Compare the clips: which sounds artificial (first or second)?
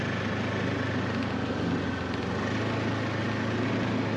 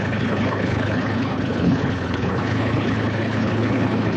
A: second